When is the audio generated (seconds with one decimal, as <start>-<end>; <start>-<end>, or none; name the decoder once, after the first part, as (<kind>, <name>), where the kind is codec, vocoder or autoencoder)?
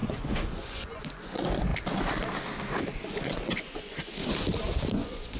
0.0-1.7 (vocoder, Vocos); 3.1-4.2; 4.9-5.4